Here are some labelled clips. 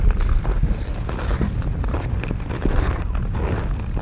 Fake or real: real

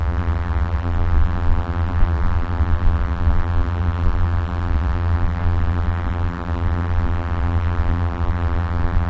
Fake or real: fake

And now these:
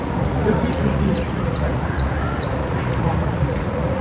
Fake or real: fake